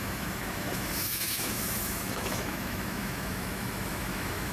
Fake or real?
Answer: fake